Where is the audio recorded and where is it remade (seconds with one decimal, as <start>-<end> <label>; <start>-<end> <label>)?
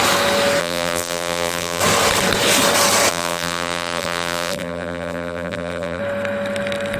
0.0-0.6 recorded; 0.6-1.8 remade; 1.8-3.1 recorded; 3.1-6.0 remade; 6.0-7.0 recorded